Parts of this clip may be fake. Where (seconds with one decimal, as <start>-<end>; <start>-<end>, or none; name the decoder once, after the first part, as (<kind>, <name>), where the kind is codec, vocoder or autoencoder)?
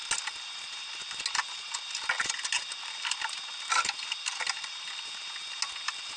none